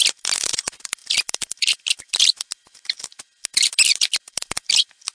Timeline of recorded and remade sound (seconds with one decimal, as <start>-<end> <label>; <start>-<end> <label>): 0.0-5.1 recorded